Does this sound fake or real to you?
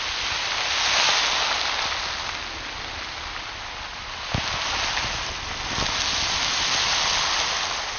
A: real